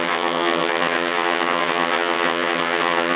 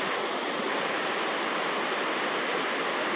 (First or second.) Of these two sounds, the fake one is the first